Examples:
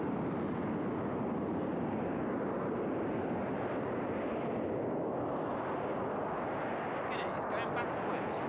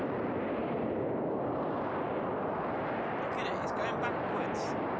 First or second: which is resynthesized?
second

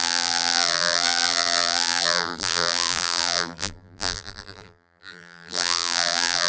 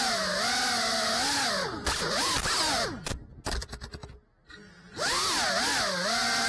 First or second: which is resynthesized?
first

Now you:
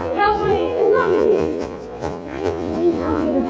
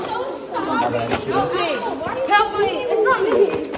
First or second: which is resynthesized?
first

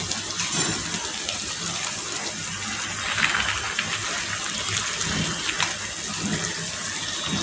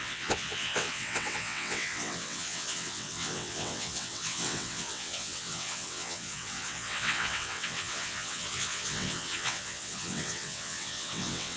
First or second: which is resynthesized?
second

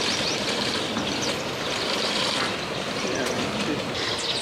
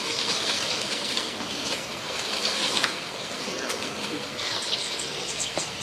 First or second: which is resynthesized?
second